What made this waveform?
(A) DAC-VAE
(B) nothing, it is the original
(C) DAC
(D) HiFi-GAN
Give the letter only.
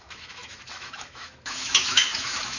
A